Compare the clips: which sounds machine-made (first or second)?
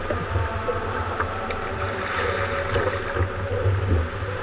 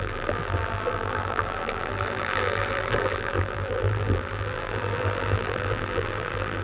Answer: second